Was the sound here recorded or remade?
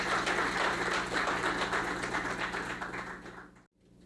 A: recorded